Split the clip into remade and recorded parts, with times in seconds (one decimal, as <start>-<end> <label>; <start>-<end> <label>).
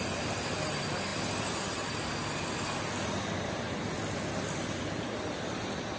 0.0-6.0 recorded